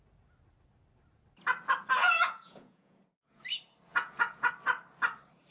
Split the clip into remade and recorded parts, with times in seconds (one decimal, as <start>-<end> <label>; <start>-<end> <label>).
0.0-2.0 recorded; 2.0-3.4 remade; 3.4-3.9 recorded; 3.9-4.5 remade; 4.5-5.5 recorded